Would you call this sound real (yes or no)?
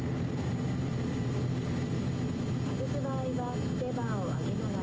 yes